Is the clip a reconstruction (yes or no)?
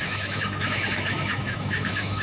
yes